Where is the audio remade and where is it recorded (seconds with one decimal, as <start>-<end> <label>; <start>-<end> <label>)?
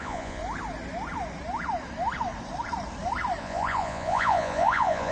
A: 0.0-0.4 remade; 0.4-3.4 recorded; 3.4-5.1 remade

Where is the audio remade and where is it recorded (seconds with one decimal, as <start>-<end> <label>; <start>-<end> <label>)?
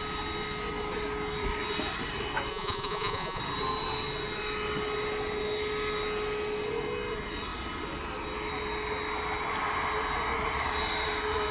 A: 0.0-2.5 recorded; 2.5-3.4 remade; 3.4-11.5 recorded